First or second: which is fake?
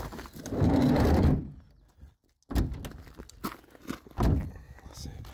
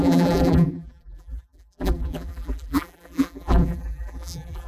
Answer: second